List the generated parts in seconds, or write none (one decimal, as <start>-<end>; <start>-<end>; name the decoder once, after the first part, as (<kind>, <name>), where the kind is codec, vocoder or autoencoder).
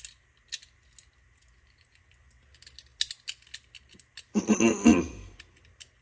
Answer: none